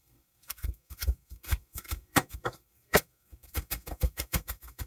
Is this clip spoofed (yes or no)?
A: yes